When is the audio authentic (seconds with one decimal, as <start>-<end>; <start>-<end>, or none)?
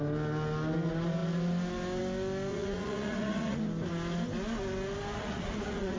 0.0-2.5; 3.6-5.2